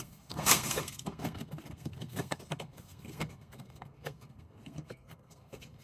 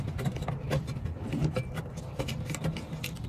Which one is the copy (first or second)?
first